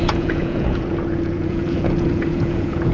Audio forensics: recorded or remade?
remade